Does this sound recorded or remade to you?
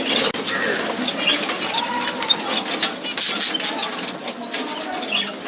recorded